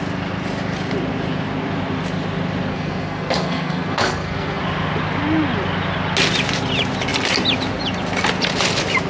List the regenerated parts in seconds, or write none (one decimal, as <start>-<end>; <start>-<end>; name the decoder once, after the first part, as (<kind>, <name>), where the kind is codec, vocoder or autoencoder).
2.7-4.6 (codec, SNAC)